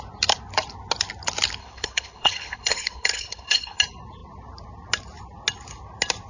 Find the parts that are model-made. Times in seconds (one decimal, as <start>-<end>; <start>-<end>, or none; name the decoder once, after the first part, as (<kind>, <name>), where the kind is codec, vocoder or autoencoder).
1.6-3.8 (codec, HILCodec)